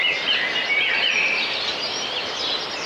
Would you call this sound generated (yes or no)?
yes